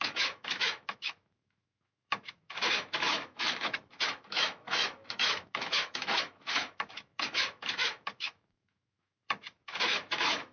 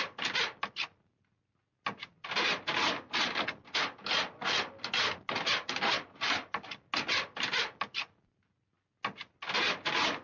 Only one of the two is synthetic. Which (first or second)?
first